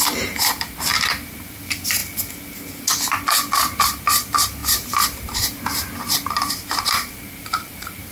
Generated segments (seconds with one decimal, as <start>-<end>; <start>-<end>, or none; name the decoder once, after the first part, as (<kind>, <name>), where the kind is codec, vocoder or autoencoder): 0.0-2.0 (vocoder, BigVGAN v2); 3.5-8.1